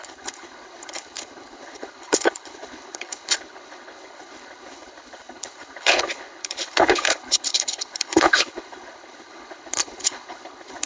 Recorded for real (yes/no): no